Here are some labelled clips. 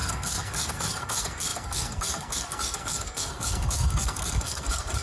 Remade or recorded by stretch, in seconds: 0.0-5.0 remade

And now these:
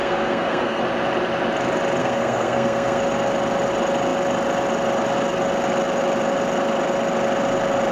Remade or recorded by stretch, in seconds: 0.0-0.8 remade; 0.8-2.0 recorded; 2.0-3.0 remade; 3.0-7.9 recorded

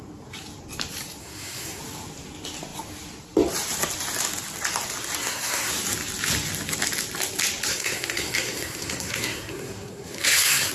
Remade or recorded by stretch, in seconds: 0.0-1.2 recorded; 1.2-1.8 remade; 1.8-5.2 recorded; 5.2-5.7 remade; 5.7-7.7 recorded; 7.7-10.7 remade